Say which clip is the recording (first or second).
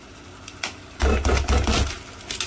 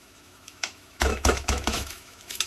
first